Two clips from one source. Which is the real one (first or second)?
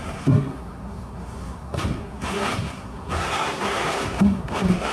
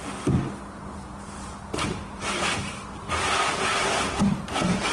second